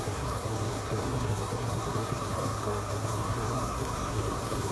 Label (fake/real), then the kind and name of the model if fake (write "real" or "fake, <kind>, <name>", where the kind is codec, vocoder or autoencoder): fake, codec, SNAC